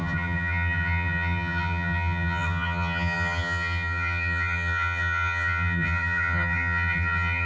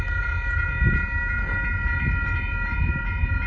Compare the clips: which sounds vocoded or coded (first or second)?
first